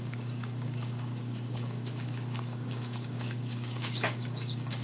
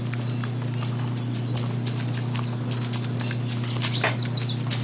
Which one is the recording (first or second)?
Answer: second